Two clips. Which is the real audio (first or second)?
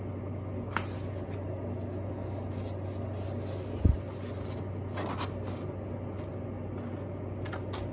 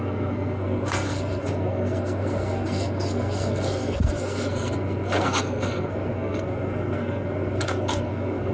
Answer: first